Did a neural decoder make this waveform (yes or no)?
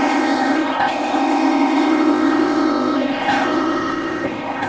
yes